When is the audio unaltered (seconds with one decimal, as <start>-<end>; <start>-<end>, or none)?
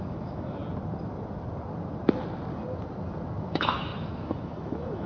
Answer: 0.6-3.4